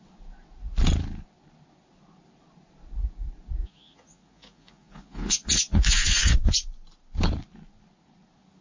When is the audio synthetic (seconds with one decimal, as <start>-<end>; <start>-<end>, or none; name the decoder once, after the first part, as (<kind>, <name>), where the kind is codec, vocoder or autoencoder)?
3.6-6.7 (vocoder, Vocos)